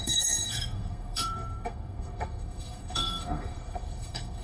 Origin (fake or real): fake